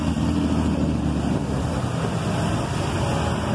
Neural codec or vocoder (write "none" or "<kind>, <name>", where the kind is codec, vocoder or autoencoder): none